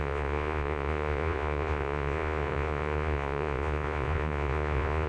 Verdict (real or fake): fake